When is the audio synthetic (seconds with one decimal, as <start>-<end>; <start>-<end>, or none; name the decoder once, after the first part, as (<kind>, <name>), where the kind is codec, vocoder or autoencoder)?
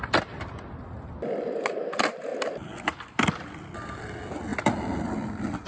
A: none